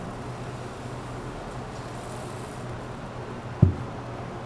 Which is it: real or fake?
real